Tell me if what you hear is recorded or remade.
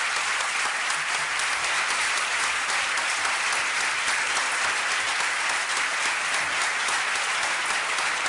recorded